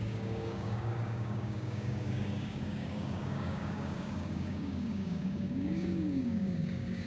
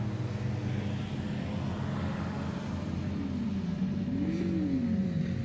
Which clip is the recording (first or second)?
second